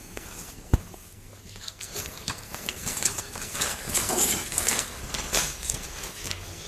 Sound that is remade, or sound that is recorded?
remade